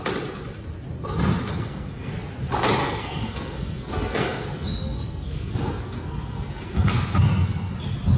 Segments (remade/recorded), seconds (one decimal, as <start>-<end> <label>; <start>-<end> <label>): 0.0-1.5 recorded; 1.5-2.1 remade; 2.1-2.8 recorded; 2.8-7.7 remade; 7.7-8.2 recorded